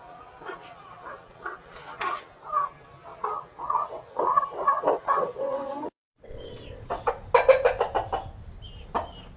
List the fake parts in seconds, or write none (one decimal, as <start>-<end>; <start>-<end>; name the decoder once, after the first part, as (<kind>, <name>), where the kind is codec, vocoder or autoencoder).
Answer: 0.0-2.3 (vocoder, WaveNeXt); 3.1-7.1